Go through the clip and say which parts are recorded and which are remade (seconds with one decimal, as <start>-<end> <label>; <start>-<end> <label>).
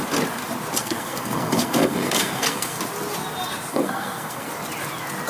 0.0-0.8 recorded; 0.8-2.8 remade; 2.8-3.7 recorded; 3.7-4.5 remade; 4.5-5.3 recorded